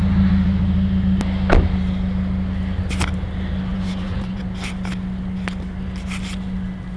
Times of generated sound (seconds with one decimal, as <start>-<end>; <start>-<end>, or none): 3.7-4.4